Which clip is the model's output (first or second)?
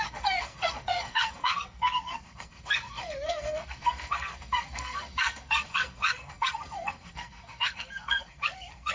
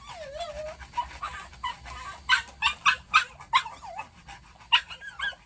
first